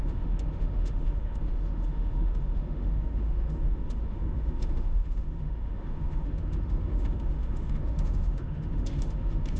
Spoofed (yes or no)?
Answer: yes